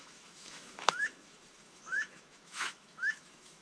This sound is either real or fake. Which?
fake